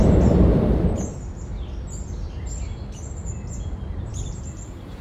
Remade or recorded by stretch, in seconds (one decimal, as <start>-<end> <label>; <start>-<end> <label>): 0.0-4.1 recorded; 4.1-5.0 remade